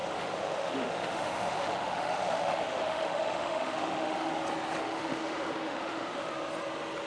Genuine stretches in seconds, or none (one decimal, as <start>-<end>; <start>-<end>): 4.3-4.8; 6.3-7.1